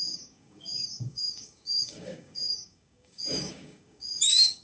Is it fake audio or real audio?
fake